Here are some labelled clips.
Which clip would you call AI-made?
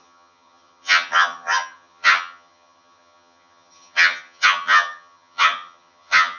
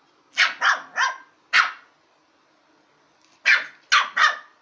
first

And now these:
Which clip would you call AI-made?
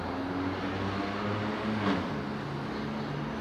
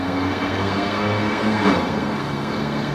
second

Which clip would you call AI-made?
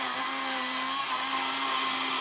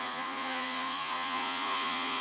second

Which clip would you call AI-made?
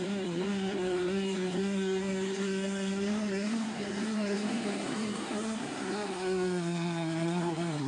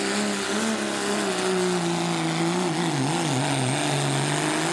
first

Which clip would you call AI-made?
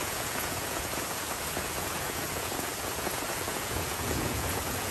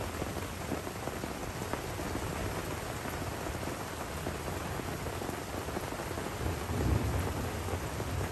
first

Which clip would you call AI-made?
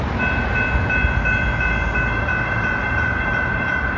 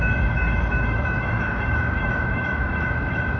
second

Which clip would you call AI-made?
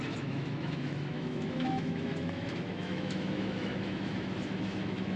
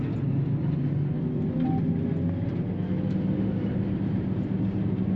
first